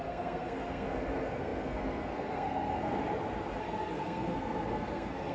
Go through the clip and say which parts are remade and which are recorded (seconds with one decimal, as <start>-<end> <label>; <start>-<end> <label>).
0.0-3.0 remade; 3.0-3.6 recorded; 3.6-5.3 remade